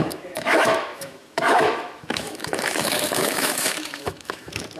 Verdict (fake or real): fake